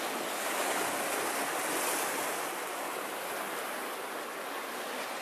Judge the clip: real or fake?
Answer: real